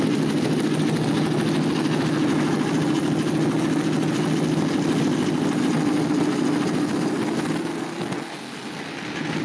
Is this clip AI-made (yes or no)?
no